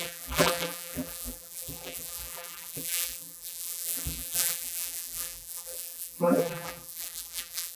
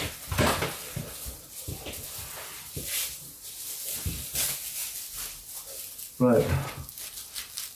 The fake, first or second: first